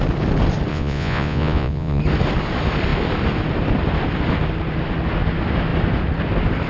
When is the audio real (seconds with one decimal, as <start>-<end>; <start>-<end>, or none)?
0.0-0.7; 2.0-6.7